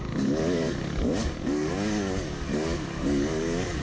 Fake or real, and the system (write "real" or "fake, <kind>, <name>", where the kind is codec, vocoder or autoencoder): fake, codec, DAC